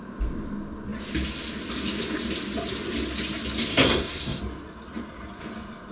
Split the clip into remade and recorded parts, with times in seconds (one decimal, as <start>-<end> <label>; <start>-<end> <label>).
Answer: 0.0-3.7 recorded; 3.7-4.4 remade; 4.4-5.9 recorded